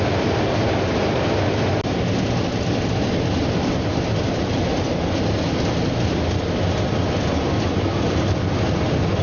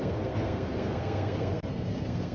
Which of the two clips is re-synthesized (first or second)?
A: second